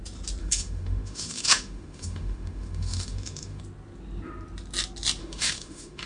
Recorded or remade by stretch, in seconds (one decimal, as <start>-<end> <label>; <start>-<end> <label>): 0.0-0.4 recorded; 0.4-3.6 remade; 3.6-5.2 recorded; 5.2-6.1 remade